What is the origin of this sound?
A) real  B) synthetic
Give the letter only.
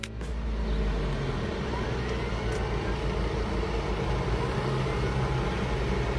A